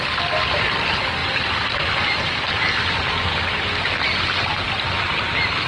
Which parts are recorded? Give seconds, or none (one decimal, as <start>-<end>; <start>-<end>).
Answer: 0.0-1.2; 2.6-4.5; 5.1-5.7